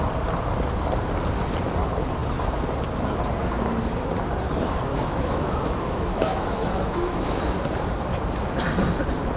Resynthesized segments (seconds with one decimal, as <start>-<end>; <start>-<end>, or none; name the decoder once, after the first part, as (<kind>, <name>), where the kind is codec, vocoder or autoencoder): 4.9-7.4 (autoencoder, DAC-VAE)